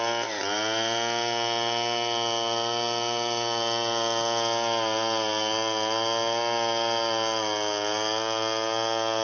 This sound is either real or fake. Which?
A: real